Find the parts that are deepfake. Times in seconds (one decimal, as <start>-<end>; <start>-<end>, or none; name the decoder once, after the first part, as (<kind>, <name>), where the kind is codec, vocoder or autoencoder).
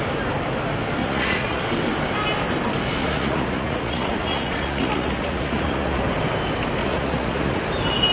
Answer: 1.0-1.6 (vocoder, Vocos); 3.0-6.0; 6.8-7.6